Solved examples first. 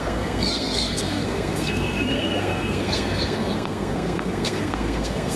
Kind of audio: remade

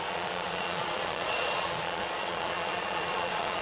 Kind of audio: remade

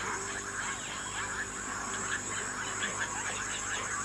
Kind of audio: recorded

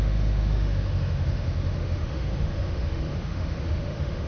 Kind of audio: remade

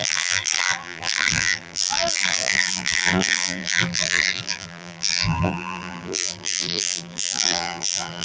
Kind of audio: remade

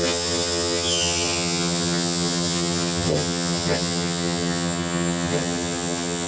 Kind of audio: remade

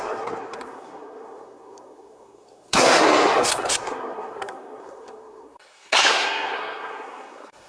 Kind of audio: remade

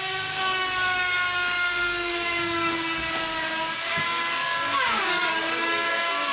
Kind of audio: remade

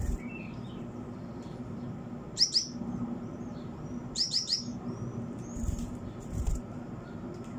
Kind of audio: remade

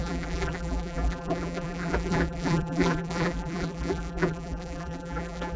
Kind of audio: remade